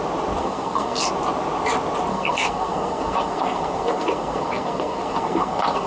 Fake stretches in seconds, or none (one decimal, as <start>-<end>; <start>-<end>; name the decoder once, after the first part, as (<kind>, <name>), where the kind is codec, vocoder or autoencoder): 0.4-1.1 (codec, SNAC); 2.1-5.9